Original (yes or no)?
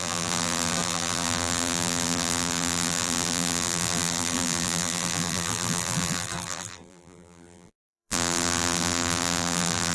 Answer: no